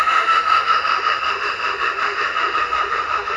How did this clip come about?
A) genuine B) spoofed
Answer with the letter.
B